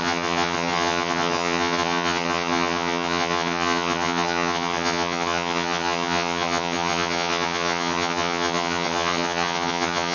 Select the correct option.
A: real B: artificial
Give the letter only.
B